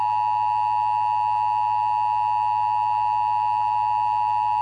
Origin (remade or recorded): recorded